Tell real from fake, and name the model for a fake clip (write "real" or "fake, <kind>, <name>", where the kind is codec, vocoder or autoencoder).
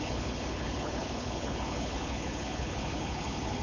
fake, codec, HILCodec